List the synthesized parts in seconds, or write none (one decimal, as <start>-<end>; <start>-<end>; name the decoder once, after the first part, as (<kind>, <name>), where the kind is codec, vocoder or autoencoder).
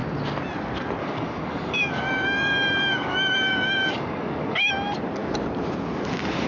1.0-4.7 (codec, DAC)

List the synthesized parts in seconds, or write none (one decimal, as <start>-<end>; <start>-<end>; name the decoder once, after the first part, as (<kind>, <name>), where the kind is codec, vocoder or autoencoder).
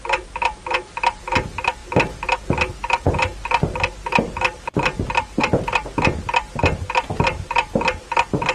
none